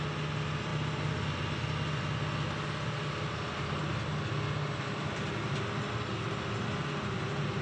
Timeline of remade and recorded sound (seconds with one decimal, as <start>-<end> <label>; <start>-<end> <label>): 0.0-7.6 recorded